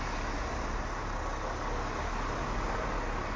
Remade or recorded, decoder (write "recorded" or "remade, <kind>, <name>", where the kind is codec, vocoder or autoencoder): recorded